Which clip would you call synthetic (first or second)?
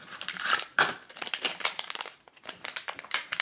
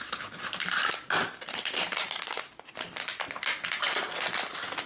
first